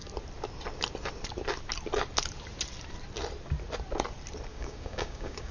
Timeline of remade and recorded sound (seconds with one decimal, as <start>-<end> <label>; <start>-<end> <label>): 0.0-4.5 recorded; 4.5-5.5 remade